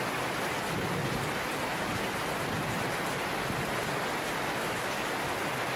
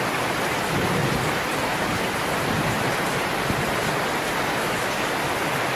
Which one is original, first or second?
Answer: first